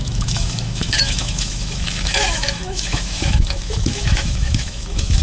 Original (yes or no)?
no